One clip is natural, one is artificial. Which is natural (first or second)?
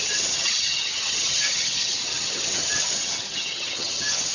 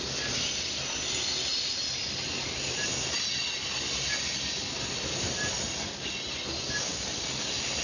second